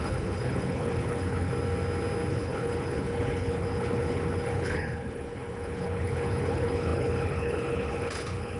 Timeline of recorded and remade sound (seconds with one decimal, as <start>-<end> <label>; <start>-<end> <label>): 0.0-1.5 remade; 1.5-2.3 recorded; 2.3-8.6 remade